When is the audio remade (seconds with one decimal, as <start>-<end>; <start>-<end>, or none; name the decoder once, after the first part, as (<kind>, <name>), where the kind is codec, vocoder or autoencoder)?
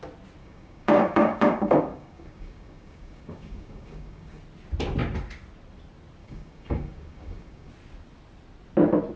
0.4-4.4 (codec, DAC); 6.2-7.7